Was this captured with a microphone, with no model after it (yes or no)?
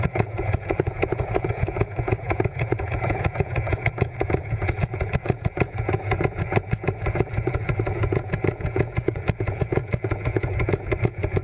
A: no